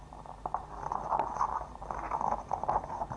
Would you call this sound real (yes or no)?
yes